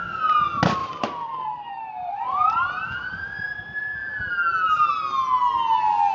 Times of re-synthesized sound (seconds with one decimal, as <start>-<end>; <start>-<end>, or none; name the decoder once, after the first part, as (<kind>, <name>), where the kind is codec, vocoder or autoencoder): 0.8-3.6 (vocoder, BigVGAN v2); 4.0-4.9